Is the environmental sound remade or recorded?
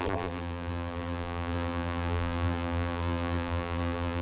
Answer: remade